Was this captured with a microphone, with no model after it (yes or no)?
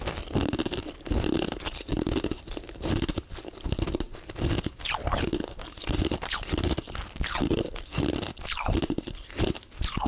yes